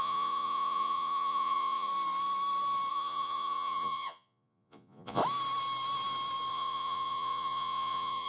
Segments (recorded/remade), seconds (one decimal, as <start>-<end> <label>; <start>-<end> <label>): 0.0-1.9 remade; 1.9-2.9 recorded; 2.9-5.2 remade; 5.2-6.5 recorded; 6.5-8.3 remade